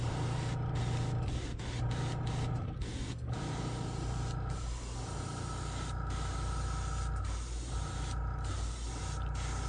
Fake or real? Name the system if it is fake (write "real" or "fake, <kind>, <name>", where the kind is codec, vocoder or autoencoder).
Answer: real